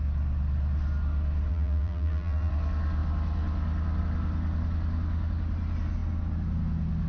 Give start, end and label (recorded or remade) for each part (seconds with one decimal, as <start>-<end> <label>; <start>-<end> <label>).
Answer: 0.0-1.5 recorded; 1.5-2.5 remade; 2.5-7.1 recorded